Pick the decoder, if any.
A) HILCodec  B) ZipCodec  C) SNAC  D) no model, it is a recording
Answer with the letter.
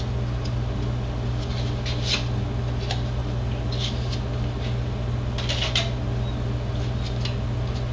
D